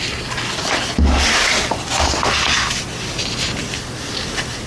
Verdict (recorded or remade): recorded